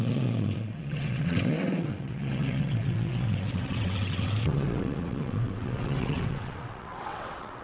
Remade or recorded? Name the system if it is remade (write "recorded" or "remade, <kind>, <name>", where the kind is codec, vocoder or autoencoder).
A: remade, vocoder, WaveNeXt